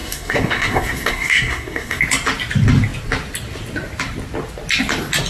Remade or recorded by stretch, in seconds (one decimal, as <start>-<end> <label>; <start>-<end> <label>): 0.0-2.0 remade; 2.0-5.3 recorded